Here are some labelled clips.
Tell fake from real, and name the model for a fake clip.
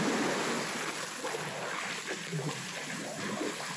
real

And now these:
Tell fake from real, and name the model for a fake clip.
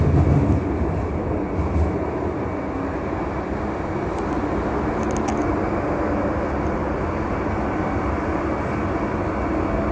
real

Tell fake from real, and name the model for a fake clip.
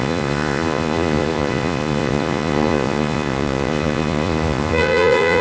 fake, vocoder, Vocos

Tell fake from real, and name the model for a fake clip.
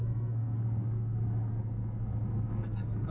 fake, codec, SNAC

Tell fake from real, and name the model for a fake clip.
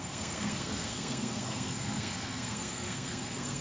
fake, codec, SNAC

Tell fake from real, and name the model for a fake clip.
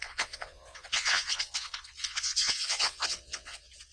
fake, vocoder, Vocos